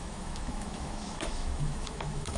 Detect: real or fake fake